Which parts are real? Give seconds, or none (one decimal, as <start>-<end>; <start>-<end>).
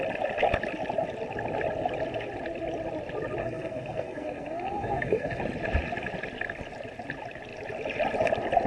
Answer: 0.0-3.4; 5.4-8.7